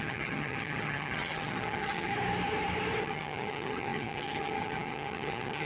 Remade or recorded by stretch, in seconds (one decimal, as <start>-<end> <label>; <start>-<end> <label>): 0.0-2.1 remade; 2.1-3.0 recorded; 3.0-5.7 remade